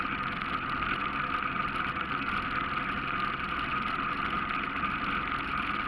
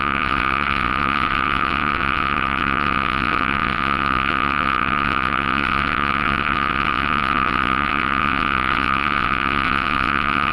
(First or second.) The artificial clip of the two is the second